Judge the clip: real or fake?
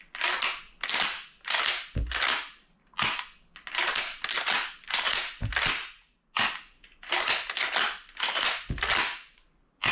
real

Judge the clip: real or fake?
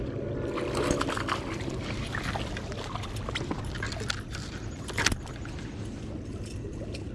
real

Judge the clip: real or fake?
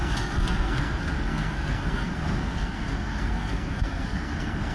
fake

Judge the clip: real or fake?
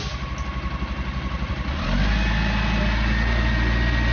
real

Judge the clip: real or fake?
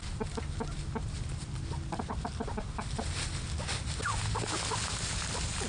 real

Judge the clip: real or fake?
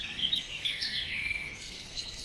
fake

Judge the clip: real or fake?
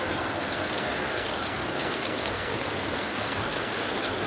fake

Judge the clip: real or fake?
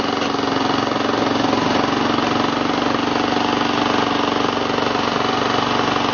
real